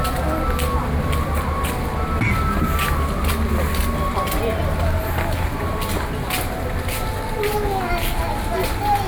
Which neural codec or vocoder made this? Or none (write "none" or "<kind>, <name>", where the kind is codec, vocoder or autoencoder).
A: none